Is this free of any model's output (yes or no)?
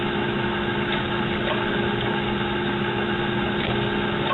yes